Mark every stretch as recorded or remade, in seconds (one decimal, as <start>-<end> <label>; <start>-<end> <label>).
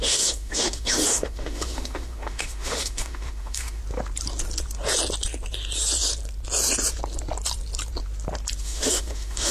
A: 0.0-3.8 remade; 3.8-8.6 recorded; 8.6-9.5 remade